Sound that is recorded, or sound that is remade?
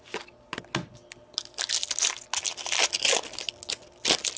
recorded